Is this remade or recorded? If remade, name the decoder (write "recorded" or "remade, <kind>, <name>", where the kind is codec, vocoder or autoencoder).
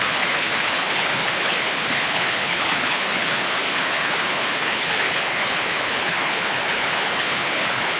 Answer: remade, codec, HILCodec